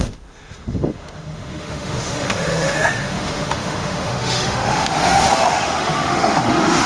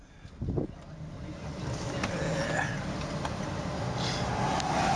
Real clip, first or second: second